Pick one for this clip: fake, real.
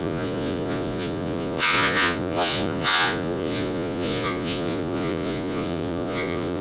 fake